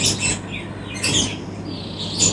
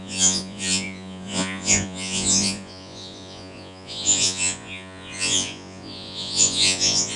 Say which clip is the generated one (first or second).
second